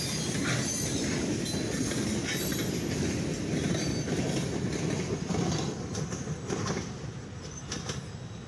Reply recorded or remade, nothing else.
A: recorded